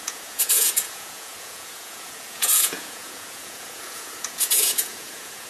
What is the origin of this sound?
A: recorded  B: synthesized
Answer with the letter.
B